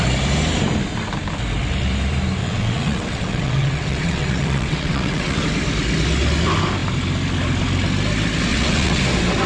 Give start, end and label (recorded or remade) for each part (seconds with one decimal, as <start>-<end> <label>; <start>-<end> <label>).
0.0-2.4 recorded; 2.4-5.4 remade; 5.4-8.5 recorded; 8.5-9.0 remade; 9.0-9.5 recorded